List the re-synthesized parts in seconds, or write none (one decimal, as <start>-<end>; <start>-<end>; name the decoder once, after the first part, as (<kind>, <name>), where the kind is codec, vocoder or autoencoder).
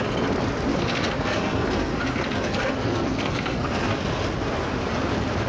0.7-4.0 (codec, SNAC)